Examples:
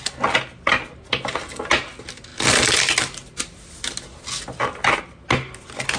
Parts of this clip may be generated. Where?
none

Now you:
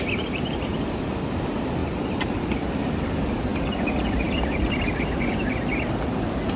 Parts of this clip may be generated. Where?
1.8-2.4 (vocoder, BigVGAN v2)

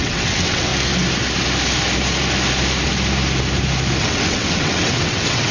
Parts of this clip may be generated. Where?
0.0-0.7 (vocoder, WaveNeXt); 4.0-5.5

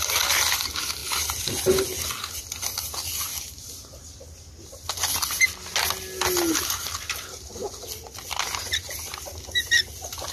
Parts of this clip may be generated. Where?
none

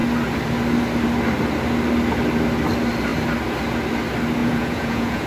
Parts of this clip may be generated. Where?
4.4-5.3 (vocoder, Vocos)